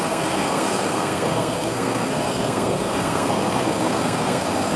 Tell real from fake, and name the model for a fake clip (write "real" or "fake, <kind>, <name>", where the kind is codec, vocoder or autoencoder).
fake, codec, SNAC